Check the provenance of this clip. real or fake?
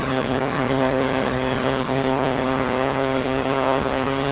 fake